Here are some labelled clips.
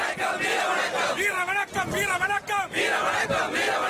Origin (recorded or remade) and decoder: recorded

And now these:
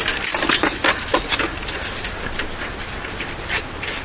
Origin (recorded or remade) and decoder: recorded